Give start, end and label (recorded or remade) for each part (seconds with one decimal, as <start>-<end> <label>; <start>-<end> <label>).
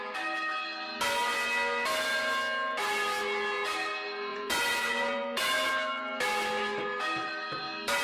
0.0-4.3 recorded; 4.3-5.7 remade; 5.7-8.0 recorded